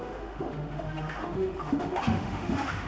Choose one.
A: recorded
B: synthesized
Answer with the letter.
B